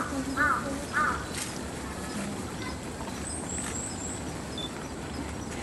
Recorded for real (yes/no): yes